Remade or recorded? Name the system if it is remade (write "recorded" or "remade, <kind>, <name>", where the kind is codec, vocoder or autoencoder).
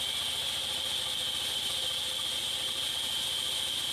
recorded